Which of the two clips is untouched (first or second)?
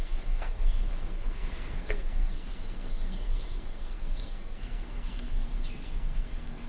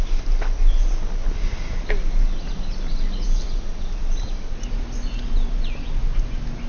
second